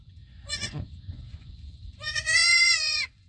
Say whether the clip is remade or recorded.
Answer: remade